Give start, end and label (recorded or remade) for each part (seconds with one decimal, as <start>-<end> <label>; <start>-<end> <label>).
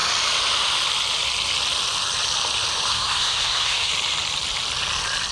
0.0-2.9 recorded; 2.9-3.9 remade; 3.9-5.3 recorded